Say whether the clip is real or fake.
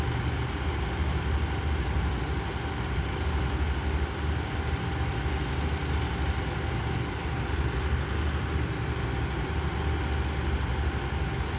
real